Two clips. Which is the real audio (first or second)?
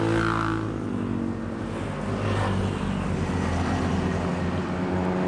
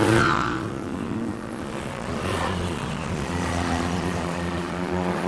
first